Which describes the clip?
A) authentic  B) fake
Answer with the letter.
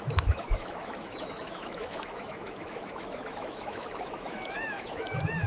B